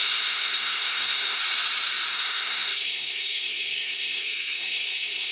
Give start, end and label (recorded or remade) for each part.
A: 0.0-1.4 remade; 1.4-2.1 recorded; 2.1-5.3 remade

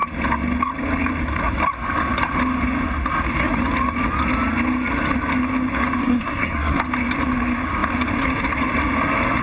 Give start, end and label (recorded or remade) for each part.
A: 0.0-6.0 recorded; 6.0-6.8 remade; 6.8-9.4 recorded

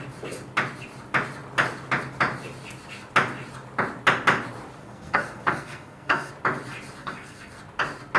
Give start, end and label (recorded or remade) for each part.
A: 0.0-4.8 recorded; 4.8-6.3 remade; 6.3-7.0 recorded; 7.0-7.6 remade; 7.6-8.2 recorded

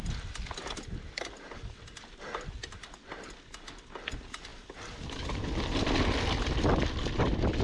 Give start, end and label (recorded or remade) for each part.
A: 0.0-7.6 recorded

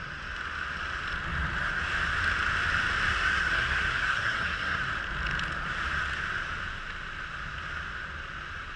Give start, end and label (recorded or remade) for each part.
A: 0.0-3.1 recorded; 3.1-4.8 remade; 4.8-8.8 recorded

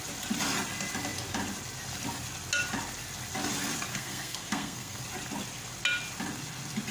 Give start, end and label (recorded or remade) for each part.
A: 0.0-3.9 recorded; 3.9-5.0 remade; 5.0-6.9 recorded